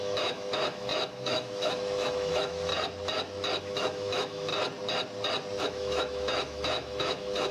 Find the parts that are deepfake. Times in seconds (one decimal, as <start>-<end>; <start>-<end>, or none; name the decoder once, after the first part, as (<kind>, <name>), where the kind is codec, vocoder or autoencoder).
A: 0.0-2.7 (autoencoder, DAC-VAE); 3.6-4.5; 5.6-7.5